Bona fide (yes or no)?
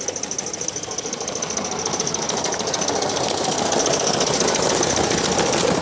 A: yes